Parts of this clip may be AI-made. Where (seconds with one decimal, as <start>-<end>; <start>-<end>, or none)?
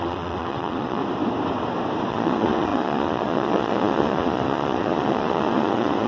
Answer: 0.0-1.0; 2.1-6.1